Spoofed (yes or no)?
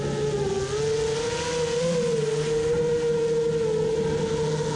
no